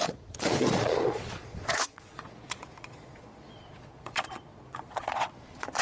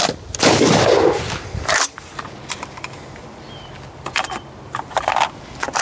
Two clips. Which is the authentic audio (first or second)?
second